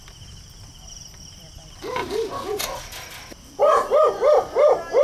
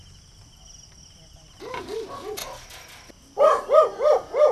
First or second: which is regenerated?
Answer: first